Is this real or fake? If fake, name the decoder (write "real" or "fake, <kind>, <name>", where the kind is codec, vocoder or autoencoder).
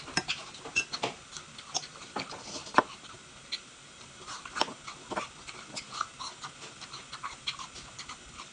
real